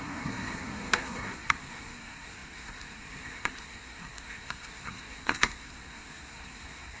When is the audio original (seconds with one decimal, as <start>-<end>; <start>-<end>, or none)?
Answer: none